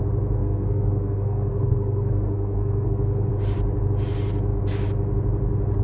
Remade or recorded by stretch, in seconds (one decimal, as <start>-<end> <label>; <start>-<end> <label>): 0.0-0.4 recorded; 0.4-3.3 remade; 3.3-5.8 recorded